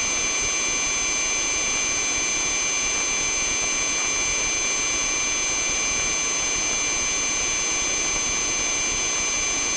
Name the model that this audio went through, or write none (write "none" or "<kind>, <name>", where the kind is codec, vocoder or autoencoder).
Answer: none